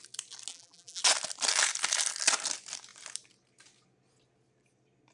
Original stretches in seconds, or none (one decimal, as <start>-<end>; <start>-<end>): 0.0-0.5; 1.0-5.1